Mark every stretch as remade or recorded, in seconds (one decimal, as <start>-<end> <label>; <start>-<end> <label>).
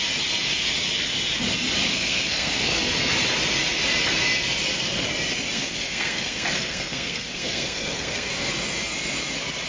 0.0-1.9 recorded; 1.9-2.8 remade; 2.8-5.5 recorded; 5.5-8.3 remade; 8.3-9.7 recorded